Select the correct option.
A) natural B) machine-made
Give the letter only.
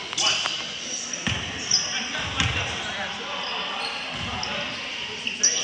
A